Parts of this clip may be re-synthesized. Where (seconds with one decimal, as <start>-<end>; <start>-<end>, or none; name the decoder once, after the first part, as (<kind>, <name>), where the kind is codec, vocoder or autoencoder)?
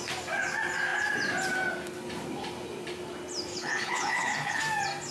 3.5-4.6 (codec, HILCodec)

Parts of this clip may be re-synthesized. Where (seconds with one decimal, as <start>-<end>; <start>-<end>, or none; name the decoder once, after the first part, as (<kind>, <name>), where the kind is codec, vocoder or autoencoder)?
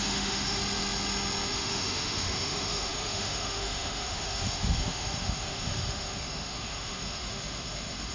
0.0-0.6 (autoencoder, DAC-VAE); 1.5-8.1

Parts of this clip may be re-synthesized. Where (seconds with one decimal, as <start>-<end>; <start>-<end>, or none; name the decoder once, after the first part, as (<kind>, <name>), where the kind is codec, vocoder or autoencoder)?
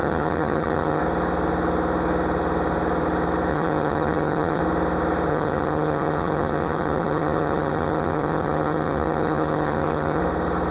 0.0-1.0 (vocoder, HiFi-GAN); 3.5-4.6; 5.3-10.2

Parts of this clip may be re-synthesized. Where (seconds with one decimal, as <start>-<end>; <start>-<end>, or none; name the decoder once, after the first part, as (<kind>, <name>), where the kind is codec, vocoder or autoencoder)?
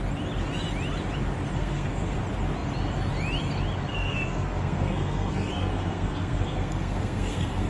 1.6-2.2 (codec, SNAC); 3.9-7.7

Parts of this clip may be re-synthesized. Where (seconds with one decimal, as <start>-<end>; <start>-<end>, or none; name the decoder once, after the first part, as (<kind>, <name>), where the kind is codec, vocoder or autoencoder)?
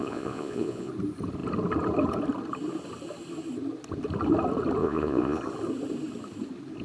0.0-0.9 (vocoder, Vocos); 4.8-5.4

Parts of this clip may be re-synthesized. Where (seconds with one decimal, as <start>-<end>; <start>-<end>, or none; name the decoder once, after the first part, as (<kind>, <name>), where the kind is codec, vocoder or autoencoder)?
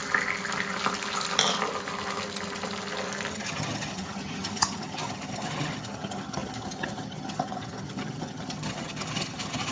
3.3-9.7 (vocoder, HiFi-GAN)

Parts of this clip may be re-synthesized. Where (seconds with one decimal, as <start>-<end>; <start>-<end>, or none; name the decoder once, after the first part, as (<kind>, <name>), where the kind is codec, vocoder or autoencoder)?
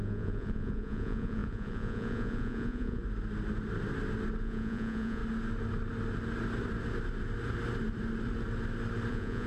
0.0-3.0 (vocoder, Vocos); 4.4-5.2; 9.1-9.5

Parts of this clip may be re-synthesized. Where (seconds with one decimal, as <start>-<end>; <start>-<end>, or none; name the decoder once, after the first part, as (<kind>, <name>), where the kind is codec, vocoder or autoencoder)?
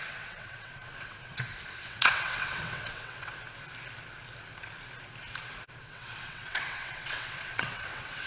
0.0-3.4 (vocoder, WaveNeXt); 5.8-8.3